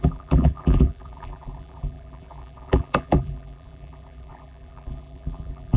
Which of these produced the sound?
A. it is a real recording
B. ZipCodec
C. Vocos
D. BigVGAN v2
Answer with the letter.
D